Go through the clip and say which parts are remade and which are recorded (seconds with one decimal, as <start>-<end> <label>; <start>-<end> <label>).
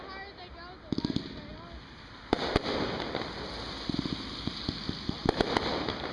0.0-6.1 recorded